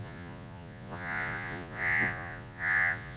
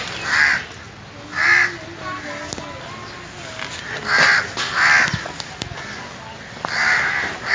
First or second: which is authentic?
second